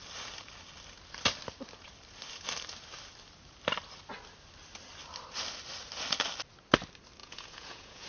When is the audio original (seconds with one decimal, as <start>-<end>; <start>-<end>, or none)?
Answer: 0.0-7.2